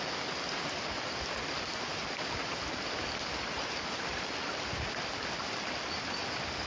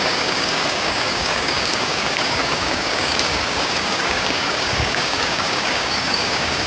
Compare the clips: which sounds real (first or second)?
first